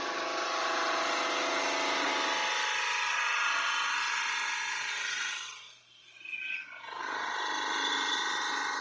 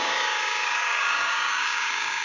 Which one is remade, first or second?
second